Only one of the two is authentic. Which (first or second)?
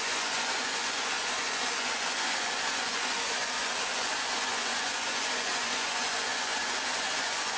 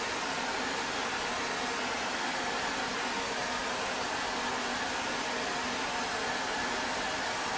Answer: second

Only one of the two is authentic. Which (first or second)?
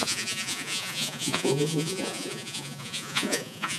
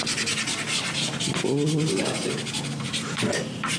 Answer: second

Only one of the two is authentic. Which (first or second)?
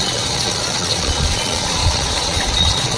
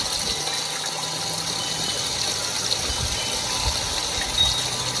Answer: second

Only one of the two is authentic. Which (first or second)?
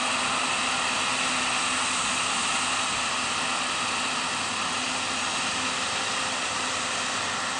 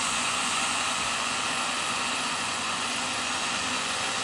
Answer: first